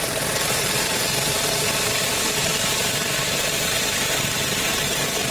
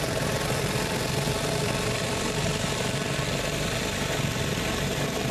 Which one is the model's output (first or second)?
first